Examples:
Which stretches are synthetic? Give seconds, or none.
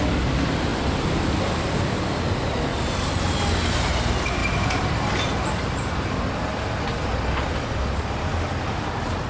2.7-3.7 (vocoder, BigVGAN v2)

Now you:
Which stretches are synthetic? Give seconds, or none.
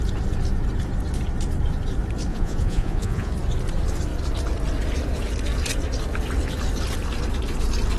2.3-3.3 (vocoder, Vocos)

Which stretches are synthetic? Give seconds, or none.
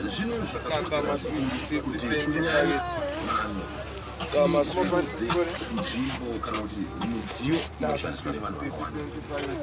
7.2-8.7 (vocoder, Vocos)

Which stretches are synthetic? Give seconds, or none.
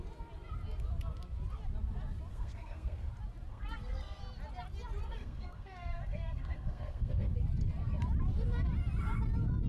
2.3-3.1 (codec, SNAC); 3.5-4.2; 5.0-7.3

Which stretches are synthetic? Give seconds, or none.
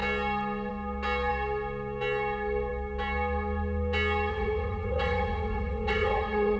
4.3-6.6 (vocoder, WaveNeXt)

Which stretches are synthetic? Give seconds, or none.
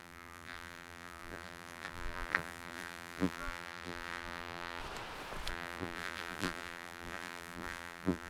0.0-4.8 (vocoder, BigVGAN v2); 5.5-8.3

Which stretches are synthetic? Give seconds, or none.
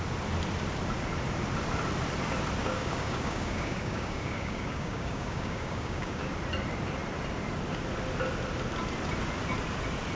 2.6-6.3 (codec, DAC)